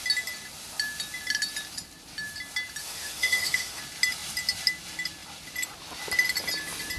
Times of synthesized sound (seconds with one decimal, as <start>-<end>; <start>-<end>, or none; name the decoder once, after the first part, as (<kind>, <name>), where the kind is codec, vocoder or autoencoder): 2.8-3.8 (autoencoder, DAC-VAE)